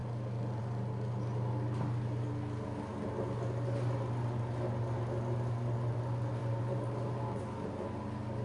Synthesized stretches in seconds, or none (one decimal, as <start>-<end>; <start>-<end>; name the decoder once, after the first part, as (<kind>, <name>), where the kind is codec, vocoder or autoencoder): 6.4-7.4 (vocoder, BigVGAN v2)